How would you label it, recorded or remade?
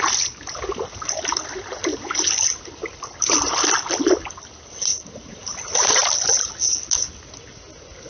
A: recorded